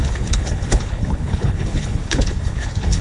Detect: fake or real fake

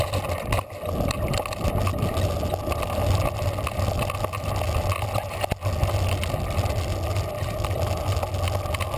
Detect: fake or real real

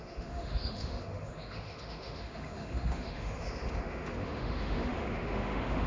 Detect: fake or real fake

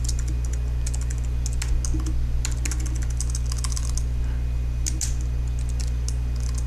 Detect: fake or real real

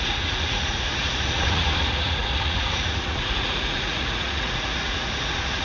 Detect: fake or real fake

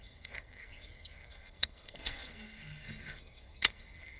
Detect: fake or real fake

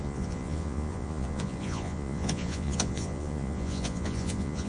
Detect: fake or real fake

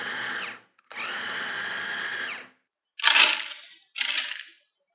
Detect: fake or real real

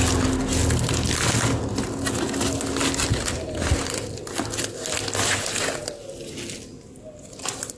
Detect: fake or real real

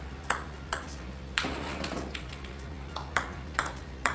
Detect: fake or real fake